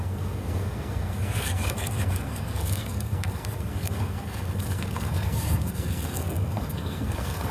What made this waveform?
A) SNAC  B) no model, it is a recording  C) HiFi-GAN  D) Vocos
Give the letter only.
A